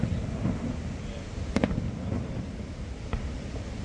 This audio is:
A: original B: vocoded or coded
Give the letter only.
A